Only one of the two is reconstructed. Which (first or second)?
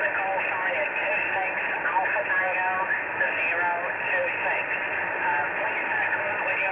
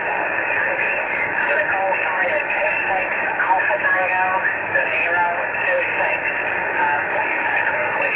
second